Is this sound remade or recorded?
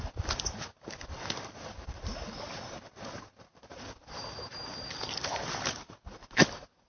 recorded